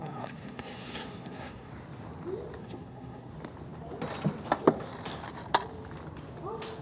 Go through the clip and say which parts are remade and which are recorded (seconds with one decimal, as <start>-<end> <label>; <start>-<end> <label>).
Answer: 0.0-1.7 remade; 1.7-2.6 recorded; 2.6-3.3 remade; 3.3-6.8 recorded